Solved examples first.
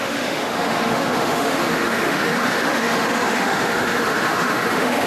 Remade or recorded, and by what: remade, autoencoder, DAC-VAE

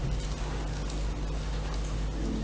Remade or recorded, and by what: recorded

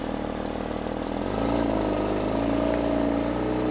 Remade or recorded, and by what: recorded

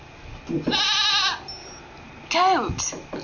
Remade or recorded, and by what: recorded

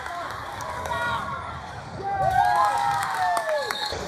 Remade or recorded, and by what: remade, codec, DAC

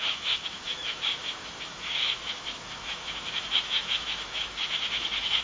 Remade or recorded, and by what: remade, autoencoder, DAC-VAE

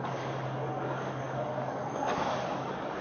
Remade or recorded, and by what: remade, codec, DAC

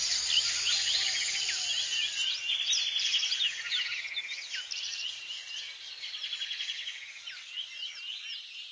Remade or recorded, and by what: recorded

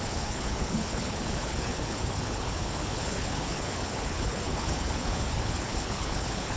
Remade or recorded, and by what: remade, codec, HILCodec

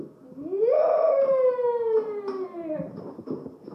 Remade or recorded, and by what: recorded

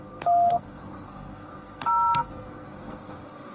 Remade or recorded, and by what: remade, codec, SNAC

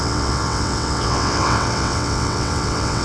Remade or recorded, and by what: remade, vocoder, WaveNeXt